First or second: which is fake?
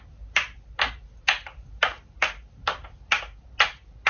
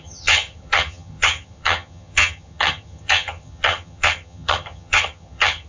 second